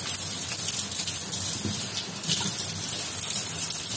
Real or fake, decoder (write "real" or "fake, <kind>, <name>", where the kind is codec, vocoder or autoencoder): real